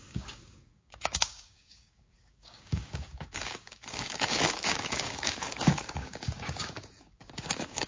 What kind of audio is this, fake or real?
fake